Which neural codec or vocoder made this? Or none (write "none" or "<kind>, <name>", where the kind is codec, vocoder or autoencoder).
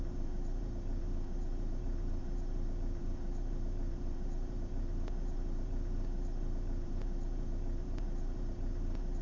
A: vocoder, BigVGAN v2